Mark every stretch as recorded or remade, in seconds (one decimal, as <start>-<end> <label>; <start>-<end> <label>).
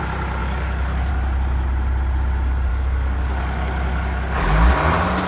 0.0-0.4 recorded; 0.4-1.1 remade; 1.1-2.7 recorded; 2.7-4.7 remade; 4.7-5.3 recorded